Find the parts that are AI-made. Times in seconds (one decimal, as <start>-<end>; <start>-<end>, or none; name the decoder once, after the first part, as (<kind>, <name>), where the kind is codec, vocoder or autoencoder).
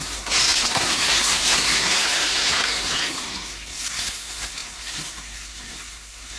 0.0-6.4 (codec, SNAC)